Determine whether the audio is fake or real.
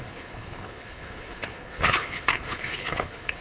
fake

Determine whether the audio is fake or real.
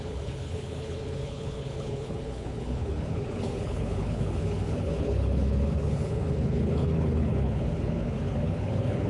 fake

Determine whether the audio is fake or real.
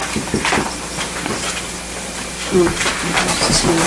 real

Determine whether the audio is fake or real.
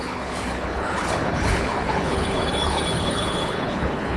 fake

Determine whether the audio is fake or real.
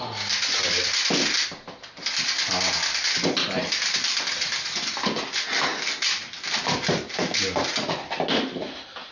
real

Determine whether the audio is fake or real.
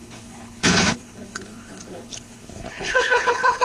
fake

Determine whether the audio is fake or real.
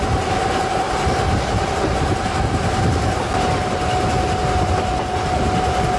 real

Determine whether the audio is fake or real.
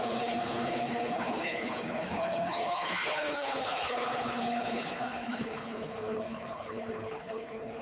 fake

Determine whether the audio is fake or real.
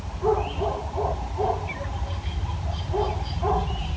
real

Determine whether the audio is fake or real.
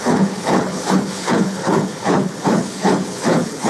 fake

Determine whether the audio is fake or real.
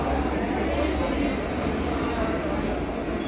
real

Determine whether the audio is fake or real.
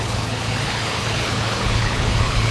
fake